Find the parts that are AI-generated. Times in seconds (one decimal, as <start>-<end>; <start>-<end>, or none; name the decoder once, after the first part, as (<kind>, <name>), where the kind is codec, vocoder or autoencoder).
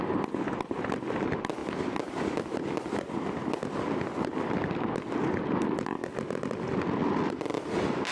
7.0-8.1 (vocoder, BigVGAN v2)